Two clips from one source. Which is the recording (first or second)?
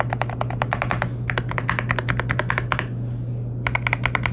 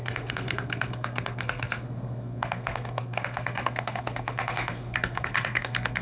first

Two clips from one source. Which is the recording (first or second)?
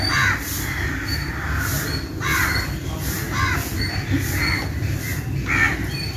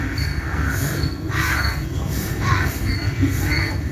first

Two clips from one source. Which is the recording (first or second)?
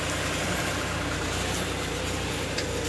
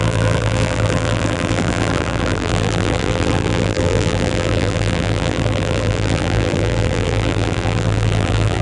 first